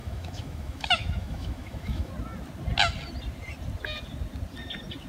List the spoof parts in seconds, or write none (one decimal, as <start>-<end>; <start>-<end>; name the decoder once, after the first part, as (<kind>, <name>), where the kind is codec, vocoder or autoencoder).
0.0-2.1 (autoencoder, DAC-VAE)